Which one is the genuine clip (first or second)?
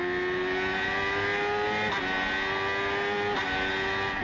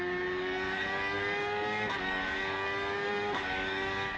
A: first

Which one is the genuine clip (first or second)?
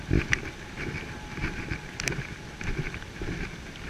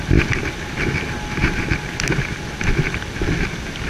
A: second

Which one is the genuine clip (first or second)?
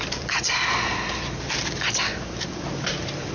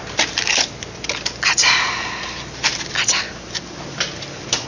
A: second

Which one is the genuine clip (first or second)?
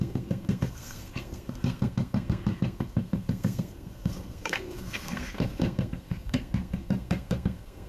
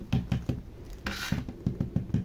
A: second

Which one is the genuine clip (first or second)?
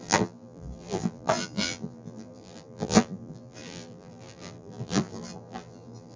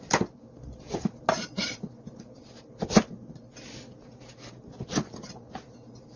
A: second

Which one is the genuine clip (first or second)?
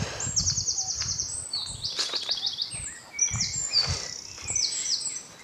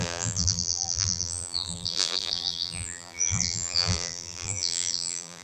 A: first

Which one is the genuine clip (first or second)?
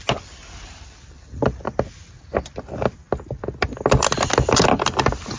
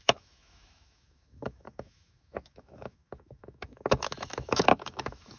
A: first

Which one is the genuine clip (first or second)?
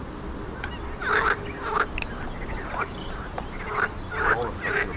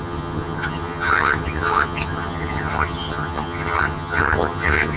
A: first